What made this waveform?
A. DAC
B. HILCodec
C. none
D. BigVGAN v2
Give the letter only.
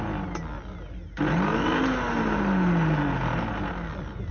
C